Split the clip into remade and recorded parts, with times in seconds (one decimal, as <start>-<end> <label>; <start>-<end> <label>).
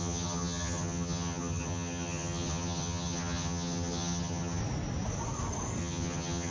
0.0-4.6 remade; 4.6-5.8 recorded; 5.8-6.5 remade